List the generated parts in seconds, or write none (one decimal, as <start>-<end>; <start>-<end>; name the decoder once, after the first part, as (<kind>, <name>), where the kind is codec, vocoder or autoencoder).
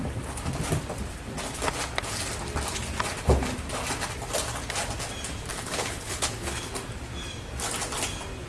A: 5.5-6.7 (codec, HILCodec)